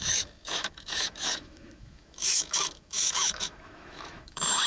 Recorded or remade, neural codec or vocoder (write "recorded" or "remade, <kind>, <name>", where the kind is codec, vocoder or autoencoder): remade, autoencoder, DAC-VAE